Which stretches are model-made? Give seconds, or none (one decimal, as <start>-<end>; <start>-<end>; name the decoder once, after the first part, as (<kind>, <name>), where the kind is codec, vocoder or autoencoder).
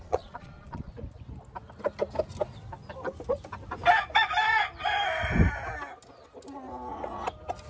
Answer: 0.0-0.9 (vocoder, Vocos)